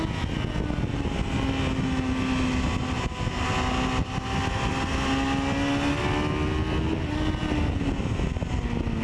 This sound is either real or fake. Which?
real